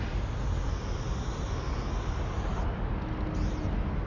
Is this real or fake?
real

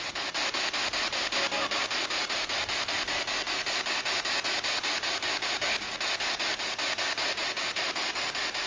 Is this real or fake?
real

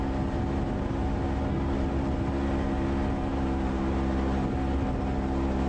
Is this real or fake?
real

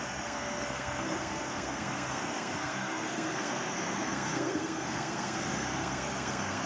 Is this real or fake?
fake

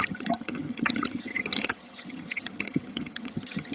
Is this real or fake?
fake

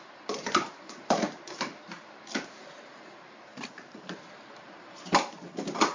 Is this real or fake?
fake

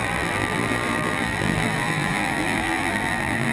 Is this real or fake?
fake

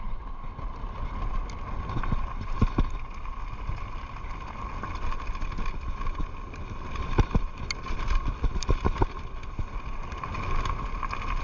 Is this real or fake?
real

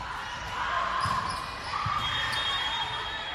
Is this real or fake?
fake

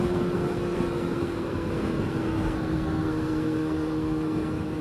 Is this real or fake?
fake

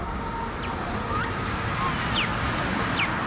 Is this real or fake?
real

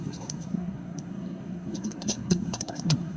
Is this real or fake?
fake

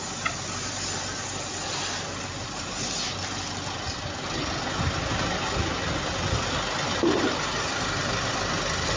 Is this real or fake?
real